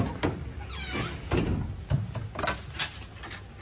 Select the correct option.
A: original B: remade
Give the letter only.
A